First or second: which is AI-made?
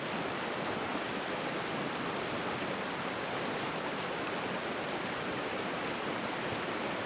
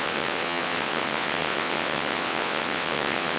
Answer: second